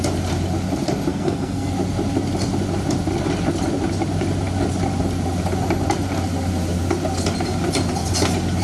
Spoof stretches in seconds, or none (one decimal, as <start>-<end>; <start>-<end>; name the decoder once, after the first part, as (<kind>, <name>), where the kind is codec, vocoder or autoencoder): 1.1-1.7 (codec, SNAC)